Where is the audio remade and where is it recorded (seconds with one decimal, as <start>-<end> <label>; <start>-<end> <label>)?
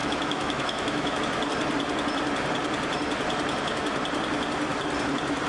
0.0-1.2 remade; 1.2-5.5 recorded